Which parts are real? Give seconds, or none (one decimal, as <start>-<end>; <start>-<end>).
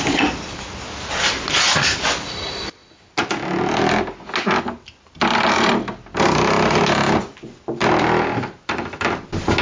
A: 0.0-9.6